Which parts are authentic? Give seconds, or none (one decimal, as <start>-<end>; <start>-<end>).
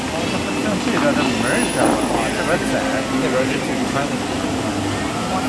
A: 0.0-1.8; 5.1-5.5